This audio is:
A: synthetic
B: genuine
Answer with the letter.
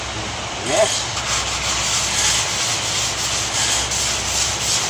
B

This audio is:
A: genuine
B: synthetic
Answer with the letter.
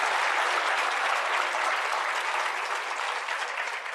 A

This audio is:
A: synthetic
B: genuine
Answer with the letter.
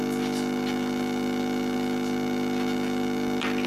B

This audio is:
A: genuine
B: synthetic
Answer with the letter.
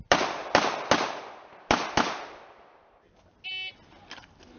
A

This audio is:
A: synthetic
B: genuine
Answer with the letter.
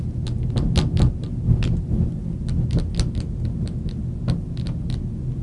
B